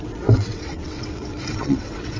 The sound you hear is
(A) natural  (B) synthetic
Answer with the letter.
B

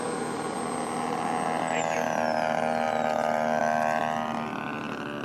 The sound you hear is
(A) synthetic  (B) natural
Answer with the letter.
B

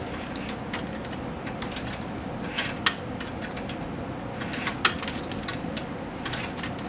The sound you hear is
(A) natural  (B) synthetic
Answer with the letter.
A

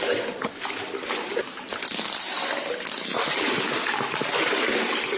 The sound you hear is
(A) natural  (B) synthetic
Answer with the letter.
A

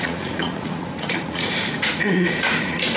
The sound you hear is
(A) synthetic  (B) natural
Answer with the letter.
A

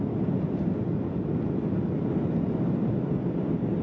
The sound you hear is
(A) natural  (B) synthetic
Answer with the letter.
A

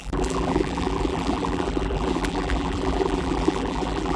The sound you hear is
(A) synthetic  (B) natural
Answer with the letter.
A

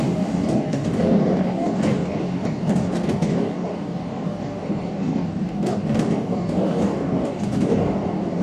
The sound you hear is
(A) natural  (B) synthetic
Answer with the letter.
B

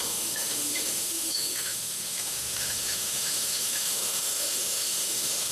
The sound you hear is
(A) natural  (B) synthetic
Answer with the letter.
B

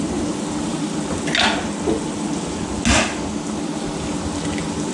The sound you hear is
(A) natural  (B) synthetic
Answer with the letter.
A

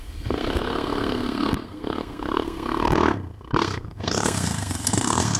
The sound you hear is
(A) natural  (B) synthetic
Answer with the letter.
B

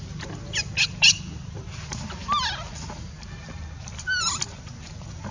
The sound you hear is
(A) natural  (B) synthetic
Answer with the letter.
A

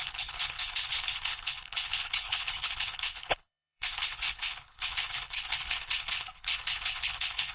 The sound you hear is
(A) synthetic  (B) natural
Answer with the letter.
A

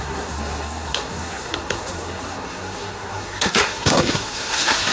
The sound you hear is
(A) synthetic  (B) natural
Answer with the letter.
A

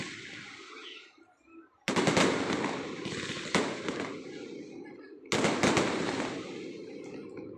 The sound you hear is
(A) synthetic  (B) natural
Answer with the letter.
B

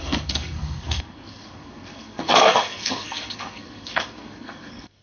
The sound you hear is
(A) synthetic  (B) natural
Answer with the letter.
A